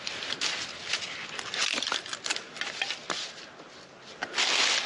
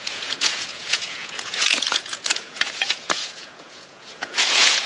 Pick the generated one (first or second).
second